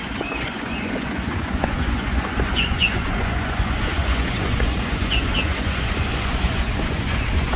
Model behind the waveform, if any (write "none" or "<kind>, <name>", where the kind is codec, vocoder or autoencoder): vocoder, Vocos